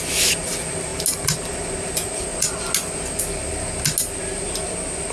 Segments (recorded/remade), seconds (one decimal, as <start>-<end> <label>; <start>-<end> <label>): 0.0-5.1 recorded